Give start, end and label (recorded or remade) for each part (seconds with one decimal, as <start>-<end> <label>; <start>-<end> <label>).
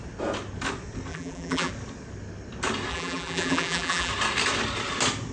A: 0.0-1.1 recorded; 1.1-1.7 remade; 1.7-2.9 recorded; 2.9-4.1 remade; 4.1-5.3 recorded